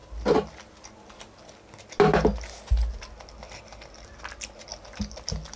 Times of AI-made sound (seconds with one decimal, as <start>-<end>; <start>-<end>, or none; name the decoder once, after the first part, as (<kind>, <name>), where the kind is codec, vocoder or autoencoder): none